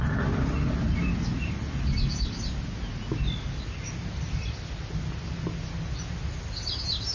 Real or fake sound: real